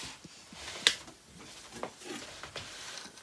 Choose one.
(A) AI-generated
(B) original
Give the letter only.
B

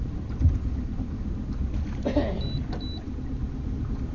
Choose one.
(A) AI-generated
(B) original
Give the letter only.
B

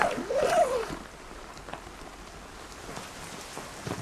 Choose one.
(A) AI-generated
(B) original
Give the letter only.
B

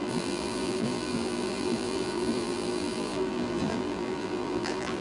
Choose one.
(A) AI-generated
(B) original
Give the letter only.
A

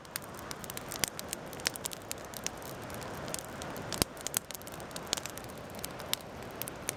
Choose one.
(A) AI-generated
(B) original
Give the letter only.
B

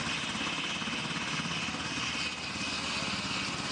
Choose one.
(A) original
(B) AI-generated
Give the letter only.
A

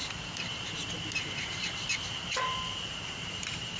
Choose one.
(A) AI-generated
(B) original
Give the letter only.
A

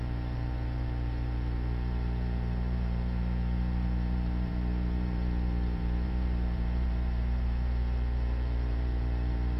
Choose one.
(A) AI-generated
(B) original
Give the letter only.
A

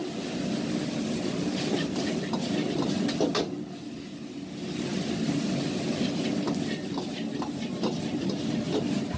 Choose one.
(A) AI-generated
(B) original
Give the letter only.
B